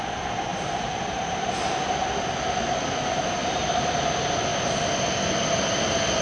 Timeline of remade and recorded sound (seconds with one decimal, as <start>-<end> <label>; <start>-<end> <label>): 0.0-0.5 recorded; 0.5-1.5 remade; 1.5-3.4 recorded; 3.4-3.9 remade; 3.9-6.2 recorded